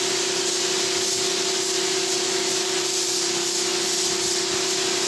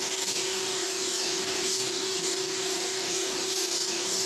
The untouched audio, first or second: first